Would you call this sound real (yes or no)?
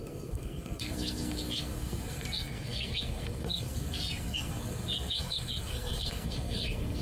no